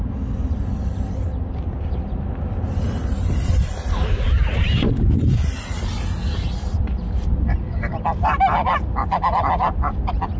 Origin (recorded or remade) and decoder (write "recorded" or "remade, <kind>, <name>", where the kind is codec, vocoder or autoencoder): recorded